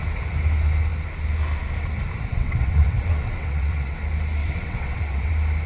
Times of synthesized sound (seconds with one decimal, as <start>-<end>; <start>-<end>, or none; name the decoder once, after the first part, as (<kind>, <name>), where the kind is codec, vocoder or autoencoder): 2.3-4.0 (vocoder, WaveNeXt); 4.4-5.3